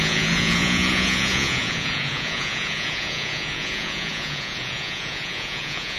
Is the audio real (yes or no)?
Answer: no